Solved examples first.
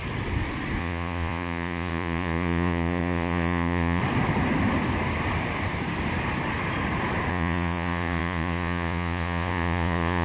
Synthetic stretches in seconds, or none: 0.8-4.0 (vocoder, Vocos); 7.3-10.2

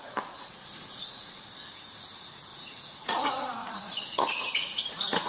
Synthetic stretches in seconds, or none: 0.0-1.4 (vocoder, Vocos); 2.5-5.3